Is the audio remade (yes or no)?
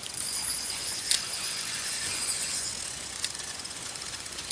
yes